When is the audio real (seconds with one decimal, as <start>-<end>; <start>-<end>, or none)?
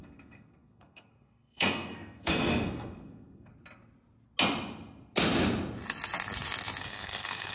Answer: 3.5-6.8